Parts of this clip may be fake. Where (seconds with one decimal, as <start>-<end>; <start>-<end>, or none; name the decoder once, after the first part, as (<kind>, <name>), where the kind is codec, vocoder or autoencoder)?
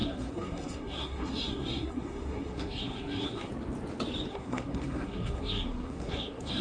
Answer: 0.0-3.5 (codec, SNAC); 4.3-6.6